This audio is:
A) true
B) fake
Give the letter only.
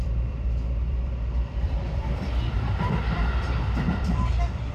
B